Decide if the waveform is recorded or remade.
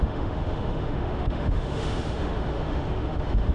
remade